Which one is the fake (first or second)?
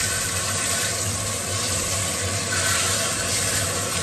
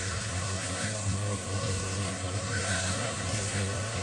second